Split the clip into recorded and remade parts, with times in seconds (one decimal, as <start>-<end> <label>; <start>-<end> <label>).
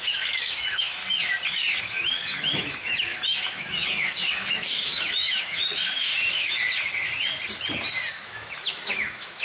0.0-1.0 remade; 1.0-1.8 recorded; 1.8-6.1 remade; 6.1-8.1 recorded; 8.1-9.4 remade